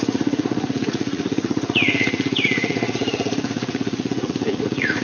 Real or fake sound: fake